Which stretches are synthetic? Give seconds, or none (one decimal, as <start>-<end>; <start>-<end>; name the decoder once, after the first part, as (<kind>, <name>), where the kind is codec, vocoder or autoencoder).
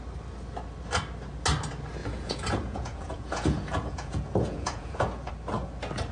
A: 2.0-5.3 (vocoder, Vocos)